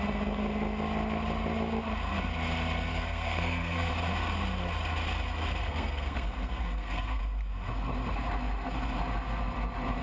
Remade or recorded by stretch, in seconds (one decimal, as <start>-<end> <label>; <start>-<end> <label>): 0.0-2.9 recorded; 2.9-3.9 remade; 3.9-5.6 recorded; 5.6-7.2 remade; 7.2-10.0 recorded